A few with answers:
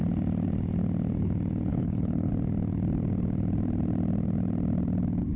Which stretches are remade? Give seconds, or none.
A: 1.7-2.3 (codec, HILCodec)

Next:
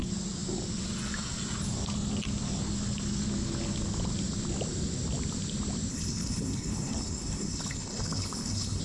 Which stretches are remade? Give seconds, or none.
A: 5.9-8.8 (codec, HILCodec)

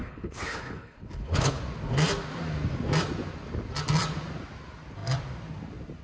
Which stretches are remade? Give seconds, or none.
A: 0.0-1.6 (codec, HILCodec)

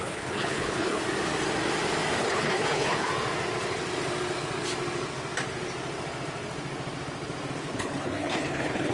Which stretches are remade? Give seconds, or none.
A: 0.0-1.0 (codec, HILCodec); 2.2-3.1; 7.6-8.9

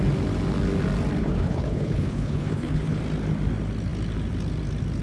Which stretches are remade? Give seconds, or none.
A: 1.2-3.0 (codec, HILCodec)

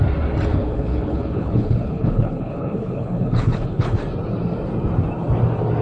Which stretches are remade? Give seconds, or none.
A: 0.5-4.0 (codec, HILCodec)

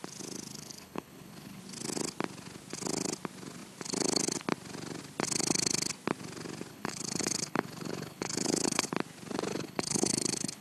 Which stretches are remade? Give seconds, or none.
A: 0.5-1.6 (codec, HILCodec); 6.7-8.9; 9.5-10.6

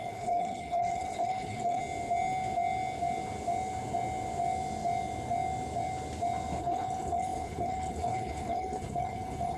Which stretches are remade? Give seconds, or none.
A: 0.0-1.8 (codec, HILCodec); 6.6-9.6